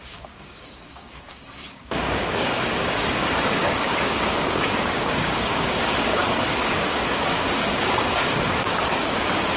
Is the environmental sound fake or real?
fake